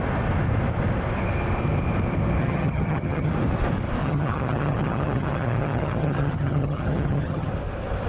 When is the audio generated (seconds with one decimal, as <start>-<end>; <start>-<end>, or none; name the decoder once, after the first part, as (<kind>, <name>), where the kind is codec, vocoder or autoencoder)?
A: 2.4-3.3 (vocoder, HiFi-GAN); 4.0-7.5